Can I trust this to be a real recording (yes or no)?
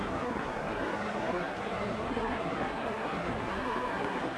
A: no